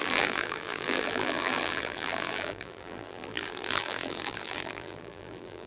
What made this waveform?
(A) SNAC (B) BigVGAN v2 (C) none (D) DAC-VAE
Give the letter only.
B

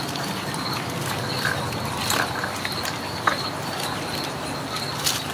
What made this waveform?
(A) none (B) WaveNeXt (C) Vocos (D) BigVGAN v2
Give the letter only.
A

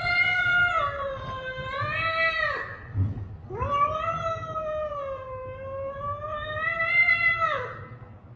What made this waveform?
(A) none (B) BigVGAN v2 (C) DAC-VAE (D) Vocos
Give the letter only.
A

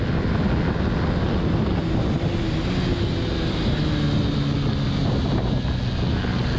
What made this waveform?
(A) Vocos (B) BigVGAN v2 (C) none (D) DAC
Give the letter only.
C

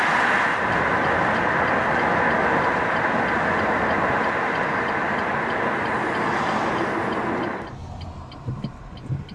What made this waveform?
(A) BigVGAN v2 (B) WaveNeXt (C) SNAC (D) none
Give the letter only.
D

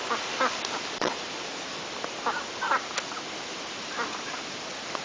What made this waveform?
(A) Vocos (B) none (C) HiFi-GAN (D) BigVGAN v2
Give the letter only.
D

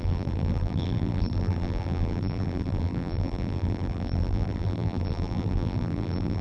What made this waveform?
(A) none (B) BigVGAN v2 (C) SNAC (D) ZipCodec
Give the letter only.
B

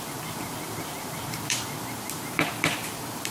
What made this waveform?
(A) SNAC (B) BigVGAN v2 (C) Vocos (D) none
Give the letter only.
B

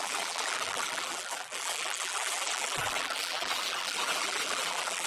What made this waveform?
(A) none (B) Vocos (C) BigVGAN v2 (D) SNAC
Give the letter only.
C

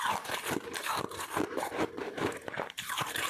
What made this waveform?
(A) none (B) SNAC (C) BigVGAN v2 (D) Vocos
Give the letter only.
C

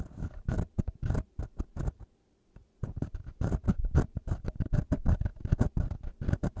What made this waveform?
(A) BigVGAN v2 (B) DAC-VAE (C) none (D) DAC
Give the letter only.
A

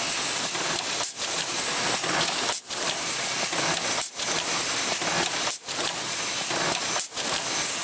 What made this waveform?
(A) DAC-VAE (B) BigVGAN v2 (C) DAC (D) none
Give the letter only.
D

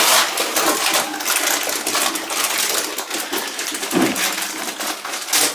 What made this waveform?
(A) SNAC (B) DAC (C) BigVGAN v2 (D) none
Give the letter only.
D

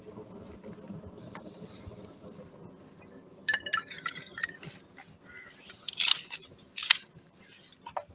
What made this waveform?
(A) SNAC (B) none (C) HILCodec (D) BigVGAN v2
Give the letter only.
B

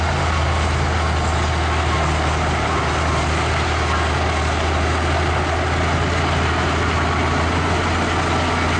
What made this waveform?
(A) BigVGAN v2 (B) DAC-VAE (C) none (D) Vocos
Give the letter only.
C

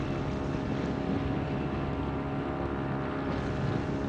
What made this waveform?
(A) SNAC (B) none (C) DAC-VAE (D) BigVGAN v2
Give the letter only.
B